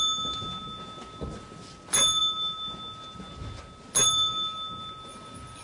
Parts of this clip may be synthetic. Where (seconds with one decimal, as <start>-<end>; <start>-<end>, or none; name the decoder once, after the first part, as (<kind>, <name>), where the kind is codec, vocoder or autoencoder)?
none